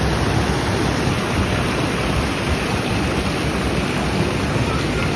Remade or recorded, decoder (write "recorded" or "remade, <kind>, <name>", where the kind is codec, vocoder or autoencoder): recorded